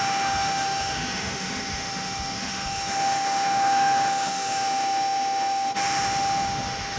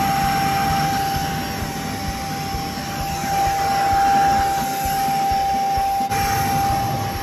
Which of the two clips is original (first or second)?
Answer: second